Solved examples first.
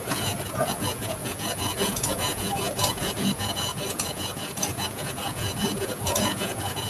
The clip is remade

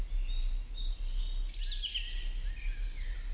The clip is recorded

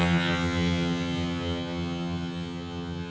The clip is remade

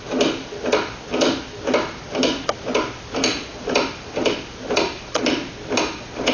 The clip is recorded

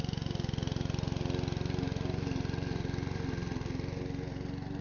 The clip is recorded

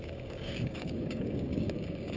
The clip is remade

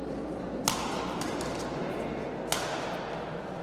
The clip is recorded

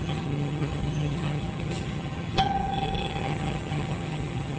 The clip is remade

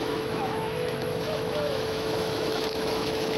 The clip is remade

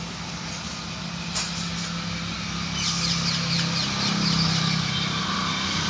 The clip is recorded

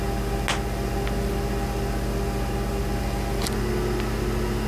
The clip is recorded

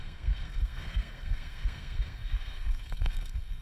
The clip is remade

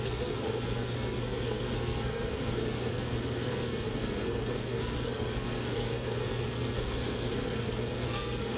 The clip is remade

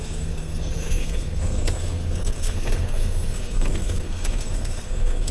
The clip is remade